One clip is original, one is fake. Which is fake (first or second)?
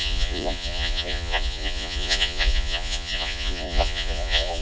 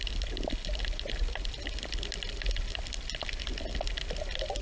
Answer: first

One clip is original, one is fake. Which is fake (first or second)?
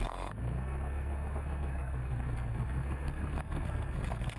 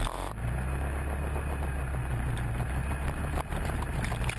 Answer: first